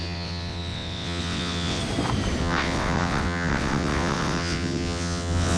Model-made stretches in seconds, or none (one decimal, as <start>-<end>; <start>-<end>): 0.0-1.8; 2.4-5.6